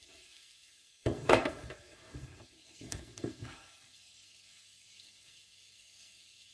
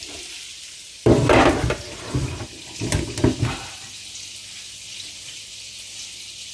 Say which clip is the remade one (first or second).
first